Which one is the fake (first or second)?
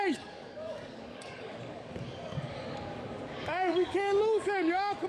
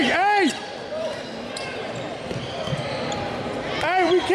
first